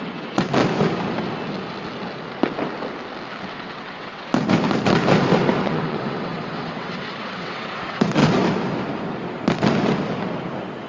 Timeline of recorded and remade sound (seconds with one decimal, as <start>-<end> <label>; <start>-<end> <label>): 0.0-0.6 remade; 0.6-3.5 recorded; 3.5-4.3 remade; 4.3-5.6 recorded; 5.6-8.2 remade; 8.2-10.9 recorded